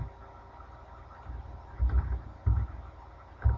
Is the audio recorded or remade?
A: recorded